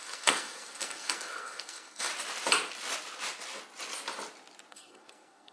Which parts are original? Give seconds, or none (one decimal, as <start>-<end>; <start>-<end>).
2.1-4.7